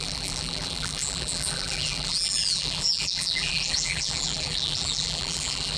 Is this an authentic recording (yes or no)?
no